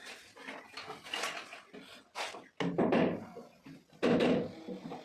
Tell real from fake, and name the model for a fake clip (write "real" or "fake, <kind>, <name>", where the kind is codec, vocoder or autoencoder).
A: real